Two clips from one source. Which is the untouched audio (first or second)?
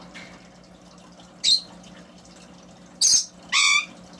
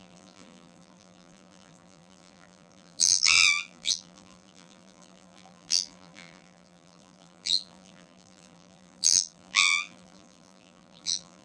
first